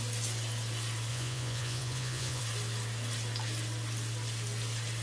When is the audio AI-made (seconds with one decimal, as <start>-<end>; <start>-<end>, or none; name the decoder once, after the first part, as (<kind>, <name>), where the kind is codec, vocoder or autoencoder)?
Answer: 1.1-2.4 (vocoder, Vocos)